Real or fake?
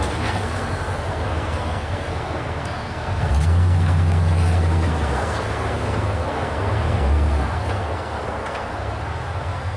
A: fake